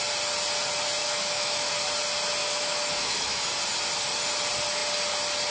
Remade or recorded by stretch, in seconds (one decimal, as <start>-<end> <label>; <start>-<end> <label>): 0.0-1.0 recorded; 1.0-1.7 remade; 1.7-2.4 recorded; 2.4-3.4 remade; 3.4-5.5 recorded